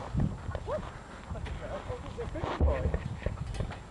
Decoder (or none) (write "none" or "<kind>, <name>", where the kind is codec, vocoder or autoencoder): none